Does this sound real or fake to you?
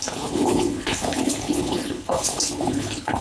fake